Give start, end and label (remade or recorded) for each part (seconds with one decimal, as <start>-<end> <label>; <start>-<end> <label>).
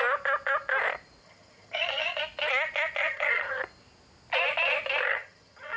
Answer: 0.0-1.2 recorded; 1.2-2.2 remade; 2.2-3.0 recorded; 3.0-3.6 remade; 3.6-5.1 recorded; 5.1-5.8 remade